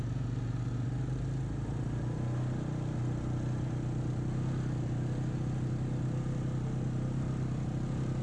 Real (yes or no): yes